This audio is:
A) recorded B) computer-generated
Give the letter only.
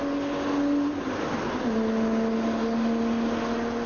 A